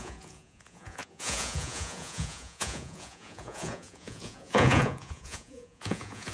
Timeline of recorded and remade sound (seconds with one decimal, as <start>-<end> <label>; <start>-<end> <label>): 0.0-6.3 remade